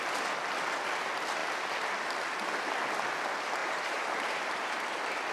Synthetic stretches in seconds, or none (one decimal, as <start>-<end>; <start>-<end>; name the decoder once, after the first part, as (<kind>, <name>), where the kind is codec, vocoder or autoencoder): 3.6-4.7 (vocoder, BigVGAN v2)